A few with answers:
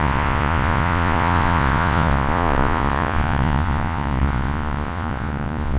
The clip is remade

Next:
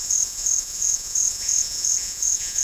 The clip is remade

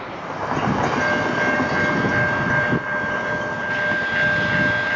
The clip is recorded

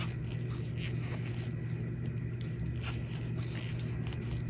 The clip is recorded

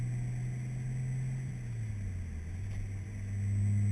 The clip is recorded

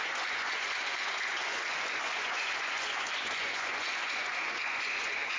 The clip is remade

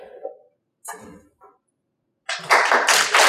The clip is recorded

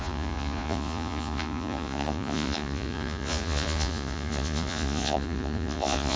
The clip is remade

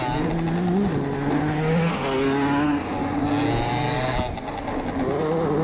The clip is recorded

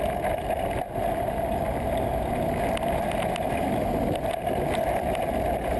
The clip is recorded